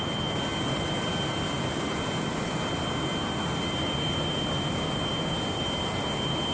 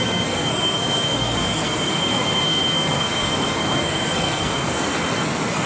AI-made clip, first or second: second